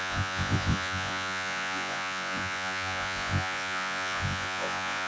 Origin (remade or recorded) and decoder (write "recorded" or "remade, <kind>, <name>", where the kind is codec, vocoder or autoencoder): remade, vocoder, Vocos